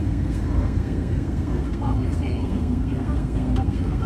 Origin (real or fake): fake